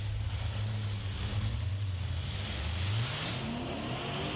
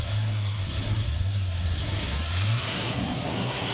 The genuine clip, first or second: first